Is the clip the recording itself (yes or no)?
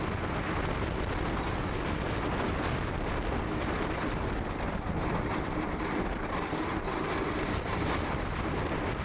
yes